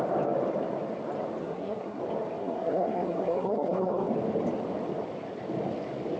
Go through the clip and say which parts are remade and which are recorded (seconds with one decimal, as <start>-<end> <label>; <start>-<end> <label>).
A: 0.0-1.4 recorded; 1.4-2.0 remade; 2.0-2.4 recorded; 2.4-4.1 remade; 4.1-6.2 recorded